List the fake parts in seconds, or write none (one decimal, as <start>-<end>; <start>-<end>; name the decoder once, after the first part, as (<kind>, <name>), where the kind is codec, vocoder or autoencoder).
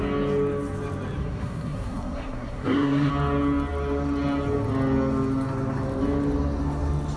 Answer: 1.2-3.1 (codec, SNAC)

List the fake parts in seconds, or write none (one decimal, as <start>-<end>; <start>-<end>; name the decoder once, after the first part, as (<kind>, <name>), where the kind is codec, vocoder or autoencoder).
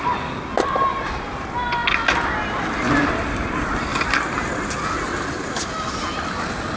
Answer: none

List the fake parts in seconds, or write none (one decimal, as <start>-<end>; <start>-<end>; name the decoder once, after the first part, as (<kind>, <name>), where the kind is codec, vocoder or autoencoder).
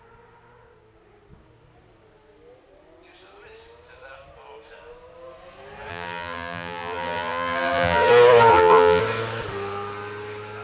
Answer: 5.9-8.1 (vocoder, BigVGAN v2); 8.5-9.0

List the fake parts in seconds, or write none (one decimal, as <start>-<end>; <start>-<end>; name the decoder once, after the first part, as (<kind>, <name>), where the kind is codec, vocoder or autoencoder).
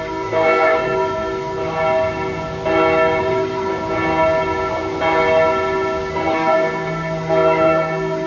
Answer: 0.0-1.6 (codec, SNAC); 3.2-3.7; 6.1-8.3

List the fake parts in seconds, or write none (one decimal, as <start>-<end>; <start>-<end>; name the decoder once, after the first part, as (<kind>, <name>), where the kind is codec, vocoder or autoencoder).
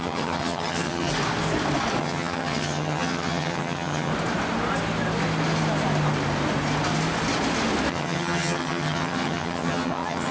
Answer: 0.0-1.1 (vocoder, HiFi-GAN); 2.0-4.1; 7.9-10.3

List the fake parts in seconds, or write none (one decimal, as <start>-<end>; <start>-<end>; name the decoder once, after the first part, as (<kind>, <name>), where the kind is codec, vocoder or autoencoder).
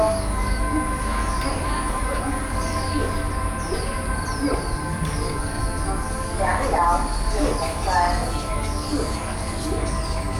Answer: 0.0-3.2 (codec, DAC); 4.8-10.4